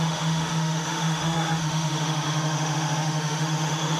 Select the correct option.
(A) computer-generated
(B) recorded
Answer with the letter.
A